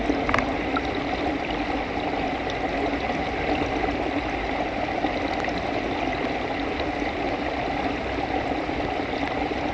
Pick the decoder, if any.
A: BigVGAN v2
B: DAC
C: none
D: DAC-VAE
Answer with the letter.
C